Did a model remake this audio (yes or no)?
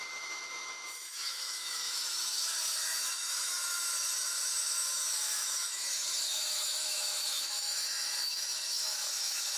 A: yes